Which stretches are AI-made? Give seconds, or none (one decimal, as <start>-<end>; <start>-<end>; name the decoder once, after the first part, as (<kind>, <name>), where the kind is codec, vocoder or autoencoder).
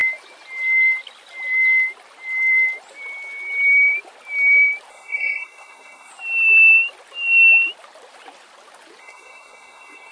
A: 4.9-6.1 (codec, SNAC); 9.0-10.1